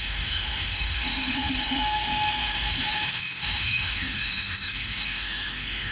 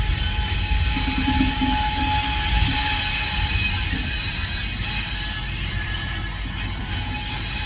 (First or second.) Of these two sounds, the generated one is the first